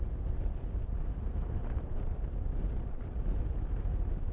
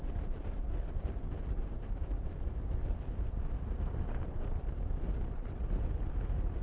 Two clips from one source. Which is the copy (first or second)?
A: second